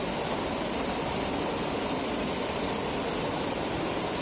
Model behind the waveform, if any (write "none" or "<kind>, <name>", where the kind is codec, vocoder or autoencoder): none